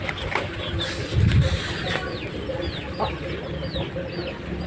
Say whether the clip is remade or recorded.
recorded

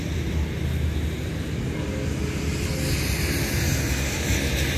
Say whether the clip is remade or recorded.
recorded